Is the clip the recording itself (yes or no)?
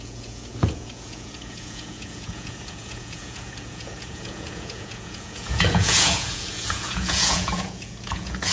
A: no